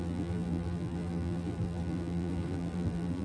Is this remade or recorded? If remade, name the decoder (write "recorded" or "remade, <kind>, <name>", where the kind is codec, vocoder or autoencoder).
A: remade, vocoder, BigVGAN v2